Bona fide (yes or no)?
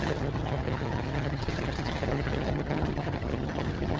no